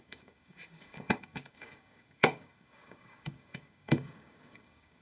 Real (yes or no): no